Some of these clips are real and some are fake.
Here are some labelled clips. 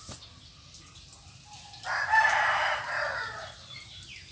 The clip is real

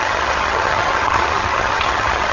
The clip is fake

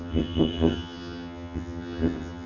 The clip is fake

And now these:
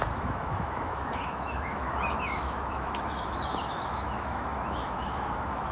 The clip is fake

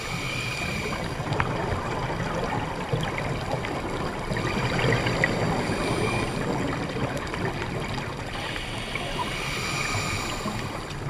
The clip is real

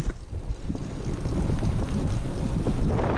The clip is real